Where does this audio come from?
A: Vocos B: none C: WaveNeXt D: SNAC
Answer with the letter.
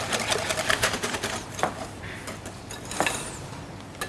B